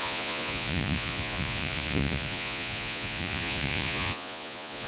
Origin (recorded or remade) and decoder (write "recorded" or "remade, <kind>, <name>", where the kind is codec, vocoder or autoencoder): remade, vocoder, Vocos